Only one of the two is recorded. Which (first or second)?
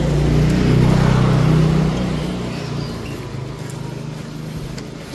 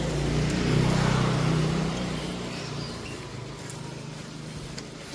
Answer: first